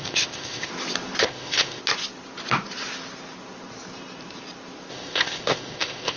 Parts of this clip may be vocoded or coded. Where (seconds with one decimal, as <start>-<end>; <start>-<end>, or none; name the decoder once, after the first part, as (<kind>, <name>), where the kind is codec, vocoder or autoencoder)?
0.0-0.7 (codec, ZipCodec); 1.2-1.8; 4.9-6.2